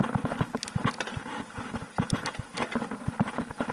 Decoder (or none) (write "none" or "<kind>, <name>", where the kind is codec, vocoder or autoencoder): none